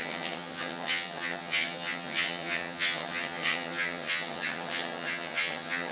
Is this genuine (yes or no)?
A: no